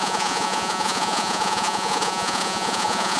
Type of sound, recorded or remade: remade